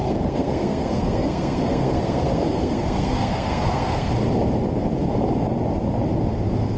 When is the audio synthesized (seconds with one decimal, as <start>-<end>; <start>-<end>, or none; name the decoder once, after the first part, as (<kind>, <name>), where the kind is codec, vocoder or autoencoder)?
0.0-4.1 (codec, SNAC)